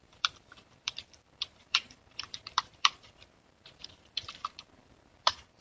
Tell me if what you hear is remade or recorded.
remade